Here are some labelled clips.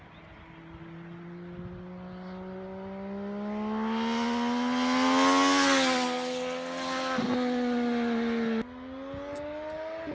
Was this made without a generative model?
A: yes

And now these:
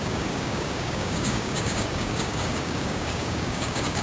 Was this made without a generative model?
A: no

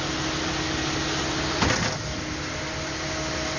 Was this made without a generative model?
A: yes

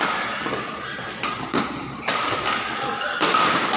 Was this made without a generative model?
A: yes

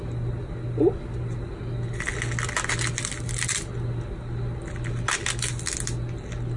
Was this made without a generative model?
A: yes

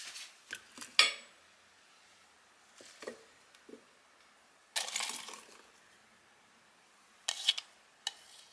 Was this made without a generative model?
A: yes